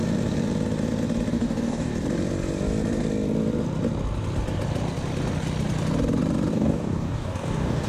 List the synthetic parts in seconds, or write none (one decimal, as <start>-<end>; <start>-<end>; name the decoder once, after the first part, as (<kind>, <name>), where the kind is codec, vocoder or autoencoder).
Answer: 1.3-1.9 (codec, DAC); 6.5-7.9